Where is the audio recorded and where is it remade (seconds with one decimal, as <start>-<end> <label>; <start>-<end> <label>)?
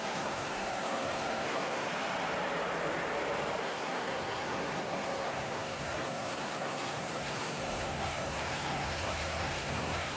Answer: 0.0-1.9 remade; 1.9-3.6 recorded; 3.6-10.2 remade